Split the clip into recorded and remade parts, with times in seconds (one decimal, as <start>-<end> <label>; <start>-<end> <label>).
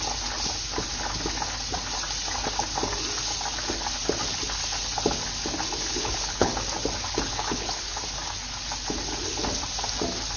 0.0-5.9 recorded; 5.9-6.5 remade; 6.5-7.3 recorded; 7.3-8.0 remade; 8.0-10.4 recorded